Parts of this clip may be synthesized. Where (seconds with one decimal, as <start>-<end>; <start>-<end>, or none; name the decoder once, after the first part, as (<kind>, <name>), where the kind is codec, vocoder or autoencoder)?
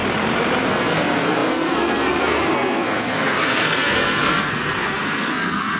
0.7-5.8 (codec, SNAC)